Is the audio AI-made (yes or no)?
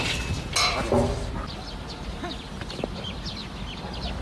no